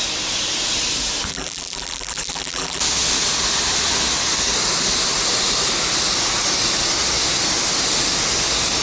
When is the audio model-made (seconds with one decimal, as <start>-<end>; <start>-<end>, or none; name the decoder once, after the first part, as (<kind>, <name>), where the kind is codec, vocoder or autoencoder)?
1.3-2.8 (vocoder, BigVGAN v2)